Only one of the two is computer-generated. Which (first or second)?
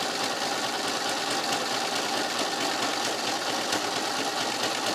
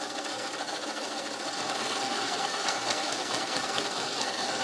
second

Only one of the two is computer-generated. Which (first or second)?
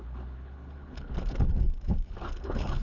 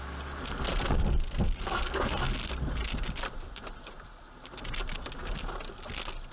first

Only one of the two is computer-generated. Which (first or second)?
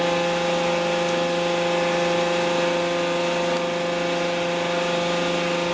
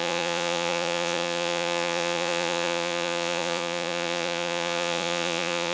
second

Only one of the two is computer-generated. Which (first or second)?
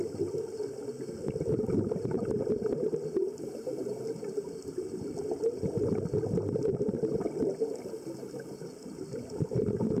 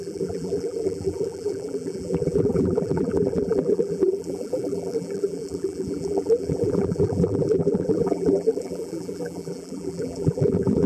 second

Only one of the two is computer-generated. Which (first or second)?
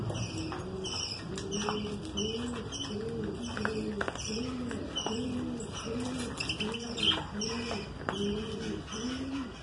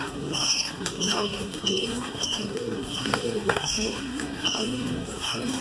second